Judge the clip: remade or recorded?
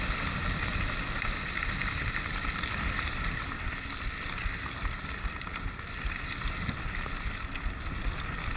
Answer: recorded